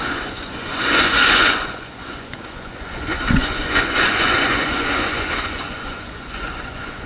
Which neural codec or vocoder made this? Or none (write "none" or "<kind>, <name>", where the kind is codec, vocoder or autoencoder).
vocoder, Vocos